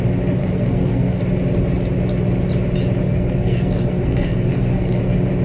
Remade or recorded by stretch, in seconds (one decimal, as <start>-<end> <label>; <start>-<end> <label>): 0.0-0.4 recorded; 0.4-1.2 remade; 1.2-3.0 recorded; 3.0-5.0 remade; 5.0-5.4 recorded